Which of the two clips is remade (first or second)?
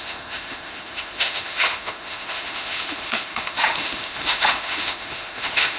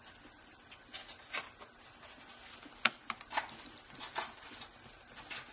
first